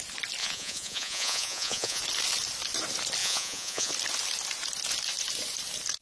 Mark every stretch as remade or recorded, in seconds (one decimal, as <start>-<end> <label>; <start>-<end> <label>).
0.0-0.4 recorded; 0.4-2.0 remade; 2.0-3.2 recorded; 3.2-3.9 remade; 3.9-6.0 recorded